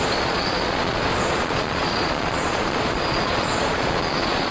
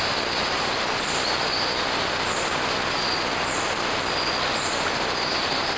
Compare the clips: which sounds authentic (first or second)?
second